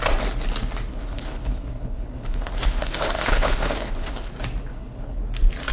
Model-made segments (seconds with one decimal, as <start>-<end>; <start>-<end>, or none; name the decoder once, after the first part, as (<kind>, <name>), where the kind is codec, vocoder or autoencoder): 0.9-4.3 (codec, HILCodec); 4.7-5.2

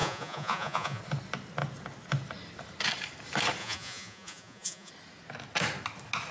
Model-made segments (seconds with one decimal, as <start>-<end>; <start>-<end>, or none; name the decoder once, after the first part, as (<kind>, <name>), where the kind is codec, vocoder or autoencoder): 0.0-1.0 (vocoder, Vocos); 3.6-4.9